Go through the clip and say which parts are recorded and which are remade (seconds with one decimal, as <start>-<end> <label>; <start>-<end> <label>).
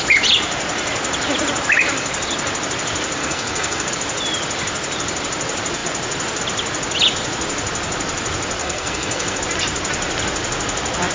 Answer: 0.0-3.2 recorded; 3.2-3.9 remade; 3.9-8.6 recorded; 8.6-9.4 remade; 9.4-11.1 recorded